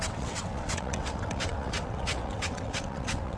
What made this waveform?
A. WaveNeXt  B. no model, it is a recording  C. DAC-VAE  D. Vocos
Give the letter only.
A